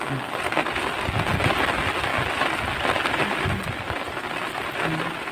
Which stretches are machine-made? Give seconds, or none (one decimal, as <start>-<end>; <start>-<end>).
none